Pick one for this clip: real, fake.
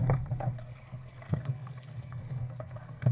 fake